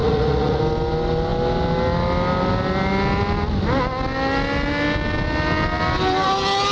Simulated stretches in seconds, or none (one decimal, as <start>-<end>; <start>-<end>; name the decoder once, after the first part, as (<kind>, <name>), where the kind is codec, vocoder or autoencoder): 0.0-0.6 (vocoder, Vocos)